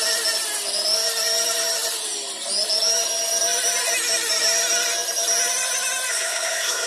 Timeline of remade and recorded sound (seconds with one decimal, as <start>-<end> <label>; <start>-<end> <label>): 0.0-6.1 recorded; 6.1-6.9 remade